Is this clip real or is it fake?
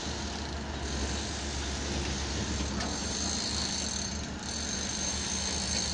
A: real